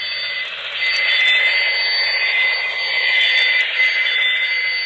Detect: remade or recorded recorded